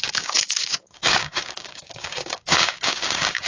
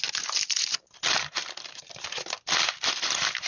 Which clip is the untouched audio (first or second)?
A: second